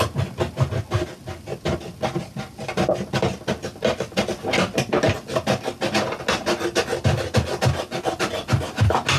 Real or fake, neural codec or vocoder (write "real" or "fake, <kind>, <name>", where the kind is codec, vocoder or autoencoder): real